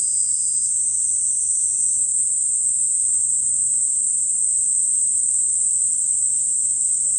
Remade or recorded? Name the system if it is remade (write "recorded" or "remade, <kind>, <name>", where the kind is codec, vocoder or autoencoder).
recorded